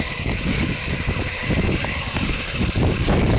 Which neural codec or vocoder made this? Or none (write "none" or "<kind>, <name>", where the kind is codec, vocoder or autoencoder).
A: vocoder, BigVGAN v2